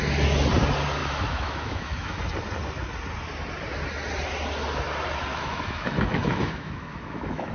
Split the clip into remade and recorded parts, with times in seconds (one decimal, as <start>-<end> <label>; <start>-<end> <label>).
0.0-1.0 recorded; 1.0-2.2 remade; 2.2-5.3 recorded; 5.3-7.5 remade